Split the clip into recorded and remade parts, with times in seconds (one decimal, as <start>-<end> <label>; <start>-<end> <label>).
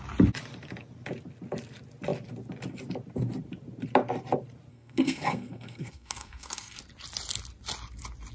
0.0-4.7 recorded; 4.7-6.8 remade; 6.8-8.3 recorded